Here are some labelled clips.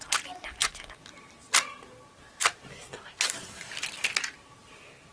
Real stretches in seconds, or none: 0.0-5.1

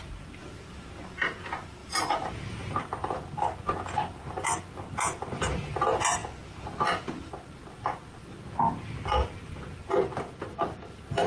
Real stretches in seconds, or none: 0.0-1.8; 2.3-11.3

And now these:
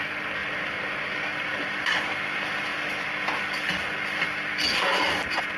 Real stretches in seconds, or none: 0.0-5.6

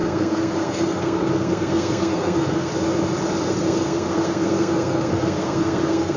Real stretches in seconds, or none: 2.7-3.4

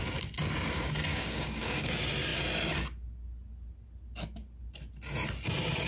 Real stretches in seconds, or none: 0.0-1.1; 1.9-5.9

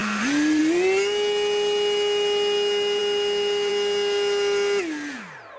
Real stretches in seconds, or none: 0.6-5.6